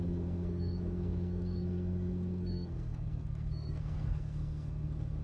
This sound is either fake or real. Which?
fake